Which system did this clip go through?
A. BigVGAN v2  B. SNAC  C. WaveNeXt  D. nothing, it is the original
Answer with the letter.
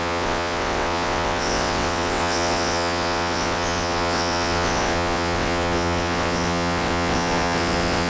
C